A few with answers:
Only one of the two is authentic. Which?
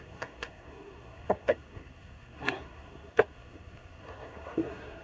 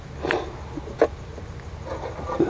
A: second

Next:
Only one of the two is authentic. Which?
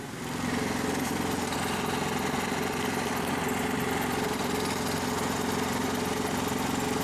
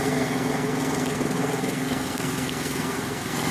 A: first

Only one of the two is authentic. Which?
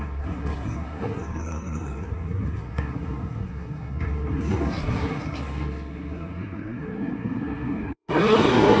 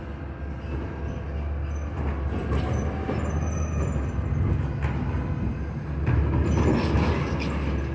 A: second